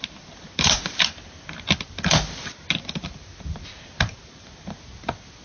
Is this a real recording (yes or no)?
yes